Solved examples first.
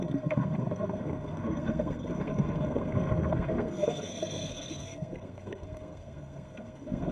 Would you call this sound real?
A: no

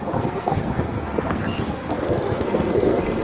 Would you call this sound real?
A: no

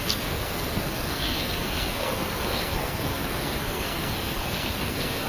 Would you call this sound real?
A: no